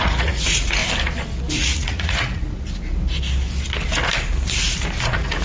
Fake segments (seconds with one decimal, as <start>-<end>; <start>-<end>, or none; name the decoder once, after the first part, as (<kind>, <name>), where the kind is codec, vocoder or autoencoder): 0.0-0.8 (vocoder, Vocos); 1.6-2.4; 5.0-5.4